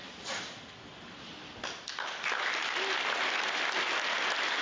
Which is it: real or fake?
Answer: real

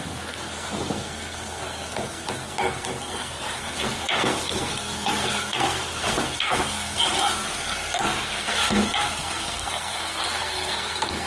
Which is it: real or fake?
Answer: fake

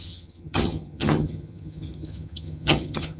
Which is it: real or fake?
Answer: fake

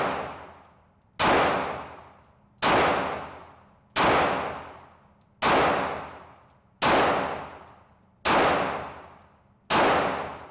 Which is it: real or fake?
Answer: real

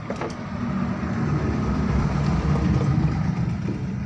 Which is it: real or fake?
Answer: fake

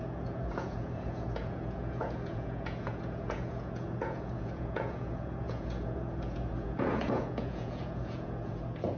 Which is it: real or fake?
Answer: fake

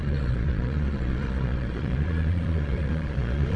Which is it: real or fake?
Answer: fake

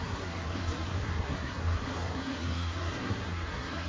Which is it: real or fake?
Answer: fake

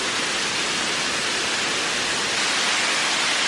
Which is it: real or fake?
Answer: real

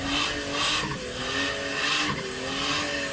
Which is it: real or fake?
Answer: real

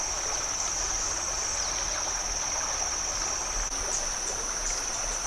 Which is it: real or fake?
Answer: real